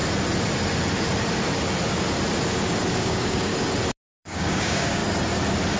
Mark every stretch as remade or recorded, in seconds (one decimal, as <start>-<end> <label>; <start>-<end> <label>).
0.0-3.0 recorded; 3.0-3.5 remade; 3.5-4.2 recorded; 4.2-5.0 remade; 5.0-5.8 recorded